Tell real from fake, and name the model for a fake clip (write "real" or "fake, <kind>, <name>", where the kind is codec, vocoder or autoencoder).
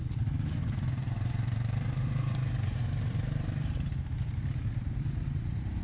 fake, vocoder, BigVGAN v2